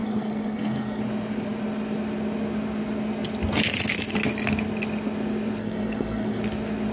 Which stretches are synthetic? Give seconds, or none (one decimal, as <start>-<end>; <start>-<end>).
0.0-1.0; 5.6-6.4